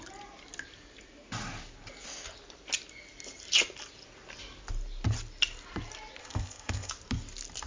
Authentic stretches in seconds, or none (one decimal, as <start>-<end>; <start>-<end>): 0.0-6.2; 6.9-7.7